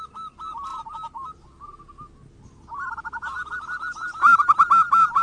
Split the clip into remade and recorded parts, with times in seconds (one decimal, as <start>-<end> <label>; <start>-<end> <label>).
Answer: 0.0-5.2 recorded